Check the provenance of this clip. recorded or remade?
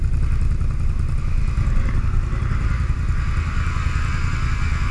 recorded